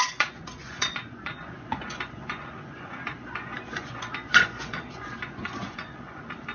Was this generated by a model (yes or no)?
yes